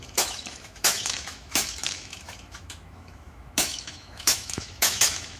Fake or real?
fake